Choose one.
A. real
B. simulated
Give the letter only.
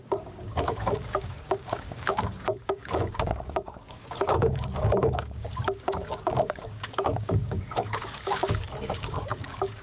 B